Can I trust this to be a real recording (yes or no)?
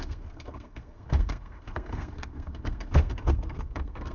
no